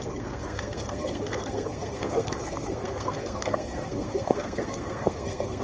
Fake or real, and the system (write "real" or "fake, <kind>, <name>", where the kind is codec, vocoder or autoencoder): fake, codec, SNAC